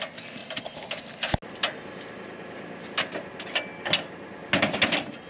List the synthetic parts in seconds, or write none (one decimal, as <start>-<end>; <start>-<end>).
0.4-1.0